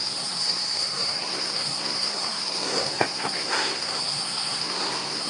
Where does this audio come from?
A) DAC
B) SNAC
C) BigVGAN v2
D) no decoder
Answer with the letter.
B